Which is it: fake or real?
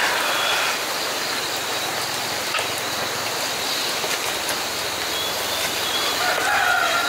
real